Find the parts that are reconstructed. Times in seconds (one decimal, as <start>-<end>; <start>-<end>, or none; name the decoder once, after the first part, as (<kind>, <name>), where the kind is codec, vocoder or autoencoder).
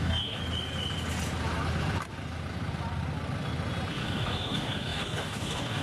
0.0-0.4 (codec, DAC); 3.9-5.8